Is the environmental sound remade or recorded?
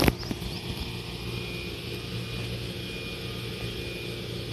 recorded